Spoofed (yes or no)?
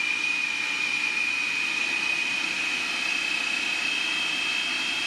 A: no